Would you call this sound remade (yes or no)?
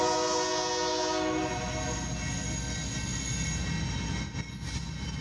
no